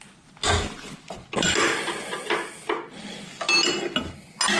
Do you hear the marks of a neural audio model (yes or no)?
no